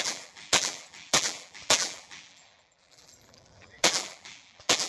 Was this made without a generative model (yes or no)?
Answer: no